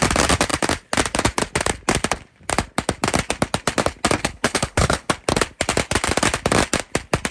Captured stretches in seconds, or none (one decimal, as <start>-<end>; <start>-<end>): 0.0-4.2; 5.1-7.3